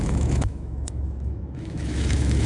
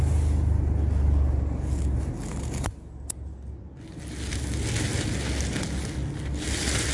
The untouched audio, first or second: second